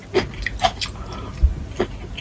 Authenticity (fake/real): real